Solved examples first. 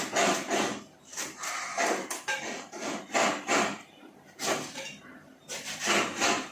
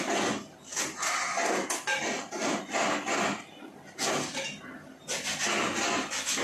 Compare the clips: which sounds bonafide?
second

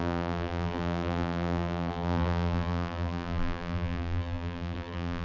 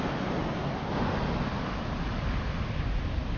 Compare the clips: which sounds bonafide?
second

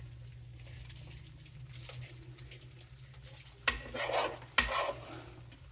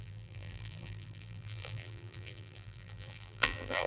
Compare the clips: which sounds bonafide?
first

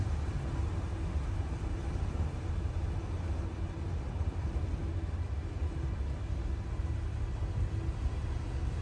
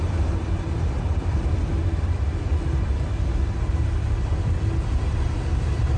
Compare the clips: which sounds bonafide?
first